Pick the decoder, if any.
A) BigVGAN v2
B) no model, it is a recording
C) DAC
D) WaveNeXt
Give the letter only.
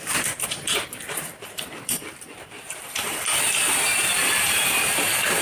A